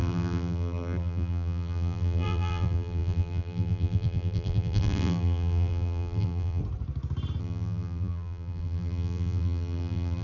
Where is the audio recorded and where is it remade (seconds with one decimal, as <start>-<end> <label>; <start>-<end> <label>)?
0.0-6.6 remade; 6.6-7.4 recorded; 7.4-10.2 remade